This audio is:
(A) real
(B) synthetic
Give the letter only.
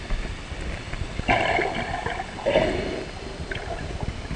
A